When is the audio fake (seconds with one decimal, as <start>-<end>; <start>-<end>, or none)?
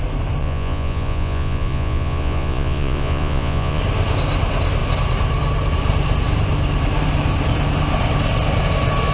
0.4-3.8